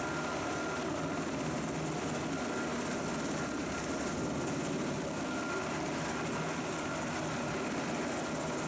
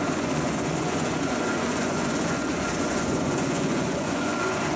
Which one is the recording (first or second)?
first